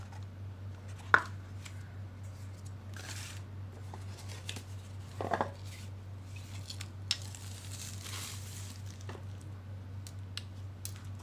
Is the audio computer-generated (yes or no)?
no